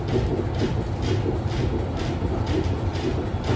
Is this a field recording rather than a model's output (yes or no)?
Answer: yes